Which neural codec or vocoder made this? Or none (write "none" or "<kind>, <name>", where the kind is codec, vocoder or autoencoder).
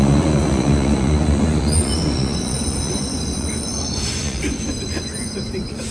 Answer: vocoder, Vocos